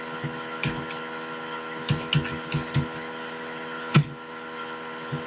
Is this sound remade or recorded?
recorded